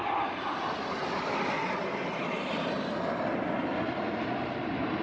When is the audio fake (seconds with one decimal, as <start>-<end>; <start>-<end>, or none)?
none